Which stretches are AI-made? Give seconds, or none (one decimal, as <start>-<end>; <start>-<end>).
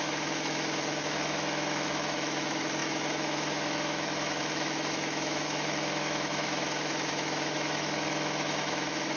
0.0-9.2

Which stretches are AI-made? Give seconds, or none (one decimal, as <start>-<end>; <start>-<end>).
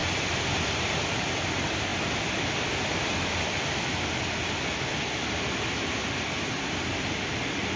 none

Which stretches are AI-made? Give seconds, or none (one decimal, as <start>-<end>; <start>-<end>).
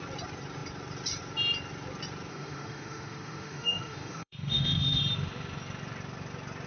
2.3-5.0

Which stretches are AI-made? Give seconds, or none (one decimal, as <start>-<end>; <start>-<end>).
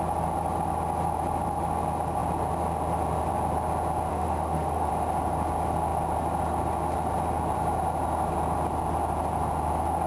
4.1-4.9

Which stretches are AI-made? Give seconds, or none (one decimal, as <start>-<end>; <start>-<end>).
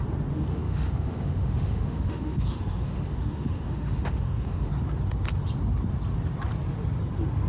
0.5-4.7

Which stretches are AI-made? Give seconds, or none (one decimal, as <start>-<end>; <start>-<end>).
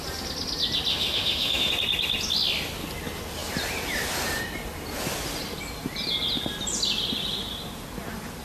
0.9-1.7